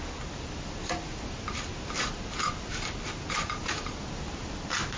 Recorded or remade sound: recorded